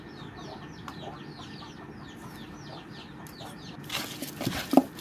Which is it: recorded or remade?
recorded